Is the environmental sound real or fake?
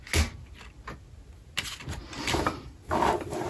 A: real